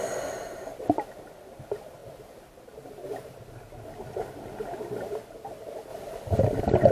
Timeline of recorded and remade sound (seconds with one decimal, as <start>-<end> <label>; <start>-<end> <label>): 0.0-6.9 recorded

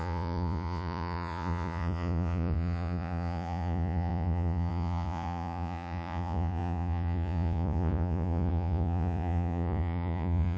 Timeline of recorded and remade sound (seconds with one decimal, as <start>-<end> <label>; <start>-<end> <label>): 0.0-10.6 remade